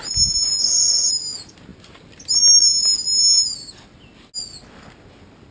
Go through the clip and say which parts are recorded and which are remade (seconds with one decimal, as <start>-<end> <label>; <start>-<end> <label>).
0.0-0.6 recorded; 0.6-1.1 remade; 1.1-5.5 recorded